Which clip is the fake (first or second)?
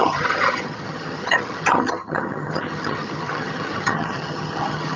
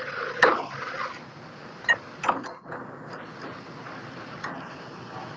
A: first